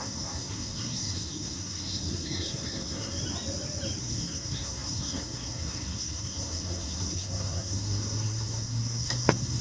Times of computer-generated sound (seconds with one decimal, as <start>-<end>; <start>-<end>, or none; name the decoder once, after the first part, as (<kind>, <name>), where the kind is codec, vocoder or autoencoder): 0.0-3.2 (codec, SNAC); 4.0-9.6

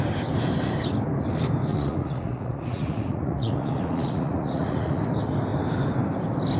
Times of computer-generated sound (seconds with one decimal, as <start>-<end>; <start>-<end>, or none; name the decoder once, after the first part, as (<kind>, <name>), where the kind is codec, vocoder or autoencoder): 1.7-5.0 (vocoder, Vocos)

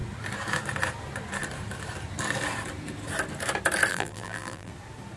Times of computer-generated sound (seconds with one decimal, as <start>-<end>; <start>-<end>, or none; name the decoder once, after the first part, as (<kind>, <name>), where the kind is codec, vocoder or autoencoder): 3.9-4.7 (vocoder, BigVGAN v2)

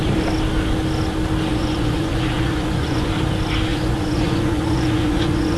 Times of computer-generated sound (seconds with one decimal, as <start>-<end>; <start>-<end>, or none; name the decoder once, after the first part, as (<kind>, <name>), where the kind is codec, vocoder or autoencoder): 1.5-3.1 (vocoder, Vocos); 3.7-5.6

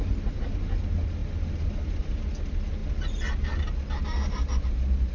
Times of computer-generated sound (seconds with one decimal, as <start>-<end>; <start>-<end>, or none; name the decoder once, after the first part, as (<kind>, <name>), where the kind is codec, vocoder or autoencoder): none

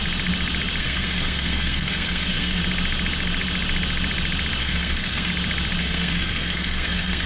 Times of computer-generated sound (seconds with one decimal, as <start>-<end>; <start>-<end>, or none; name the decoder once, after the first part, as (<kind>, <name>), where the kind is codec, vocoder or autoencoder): 0.8-2.6 (codec, SNAC); 4.6-5.3; 5.8-7.3

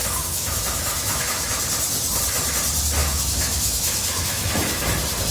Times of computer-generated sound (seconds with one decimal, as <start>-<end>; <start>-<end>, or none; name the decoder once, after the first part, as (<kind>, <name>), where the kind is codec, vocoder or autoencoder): 0.0-1.6 (autoencoder, DAC-VAE); 3.0-4.8